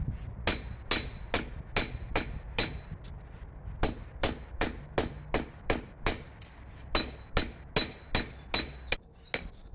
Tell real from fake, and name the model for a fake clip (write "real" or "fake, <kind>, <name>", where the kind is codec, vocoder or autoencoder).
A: real